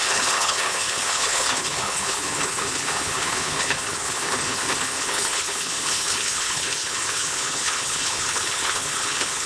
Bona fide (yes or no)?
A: no